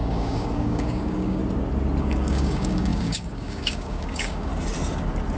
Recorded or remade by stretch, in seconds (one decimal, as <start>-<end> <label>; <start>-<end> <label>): 0.0-1.4 remade; 1.4-2.0 recorded; 2.0-4.5 remade; 4.5-5.4 recorded